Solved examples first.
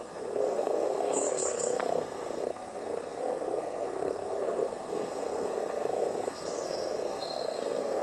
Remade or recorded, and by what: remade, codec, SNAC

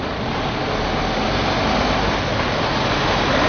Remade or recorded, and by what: recorded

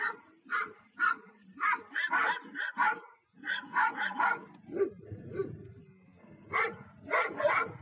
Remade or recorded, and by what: recorded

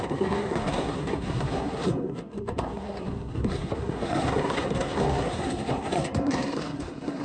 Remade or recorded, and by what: remade, codec, SNAC